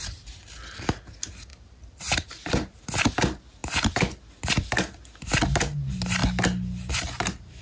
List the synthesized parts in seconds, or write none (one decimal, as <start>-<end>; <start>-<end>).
1.5-2.8